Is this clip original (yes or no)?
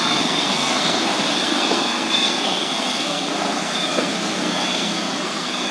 no